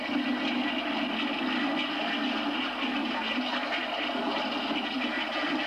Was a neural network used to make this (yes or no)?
no